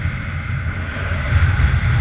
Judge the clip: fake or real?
real